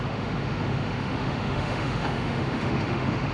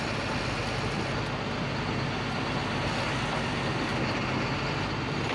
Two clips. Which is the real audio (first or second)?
second